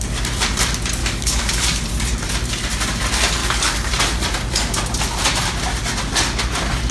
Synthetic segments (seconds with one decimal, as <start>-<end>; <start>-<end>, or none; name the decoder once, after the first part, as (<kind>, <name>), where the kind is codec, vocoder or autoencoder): 1.0-1.8 (codec, DAC); 3.4-3.9